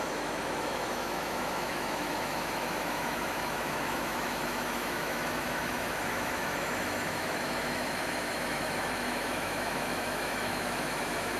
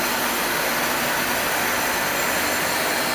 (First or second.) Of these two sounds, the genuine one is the second